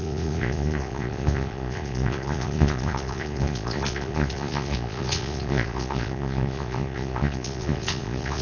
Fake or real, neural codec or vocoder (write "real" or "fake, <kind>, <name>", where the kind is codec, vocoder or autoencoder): fake, vocoder, Vocos